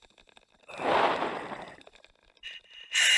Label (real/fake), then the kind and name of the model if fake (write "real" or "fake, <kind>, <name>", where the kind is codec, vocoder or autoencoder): real